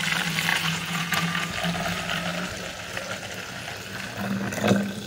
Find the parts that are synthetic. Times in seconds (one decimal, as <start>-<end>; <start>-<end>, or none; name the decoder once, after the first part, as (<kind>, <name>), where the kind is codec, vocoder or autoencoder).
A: 0.5-1.5 (vocoder, Vocos)